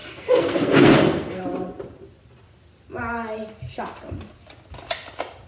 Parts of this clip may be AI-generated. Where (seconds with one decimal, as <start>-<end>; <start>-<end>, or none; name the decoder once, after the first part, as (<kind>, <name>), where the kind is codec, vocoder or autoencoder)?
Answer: 0.0-1.4 (codec, SNAC)